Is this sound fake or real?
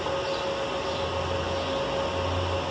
real